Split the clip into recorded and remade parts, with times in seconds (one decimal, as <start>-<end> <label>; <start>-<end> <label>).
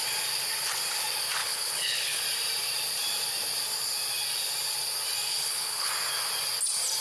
0.0-1.4 recorded; 1.4-2.2 remade; 2.2-5.3 recorded; 5.3-5.9 remade; 5.9-7.0 recorded